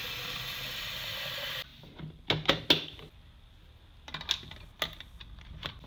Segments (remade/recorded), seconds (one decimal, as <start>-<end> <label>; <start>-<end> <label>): 0.0-5.9 recorded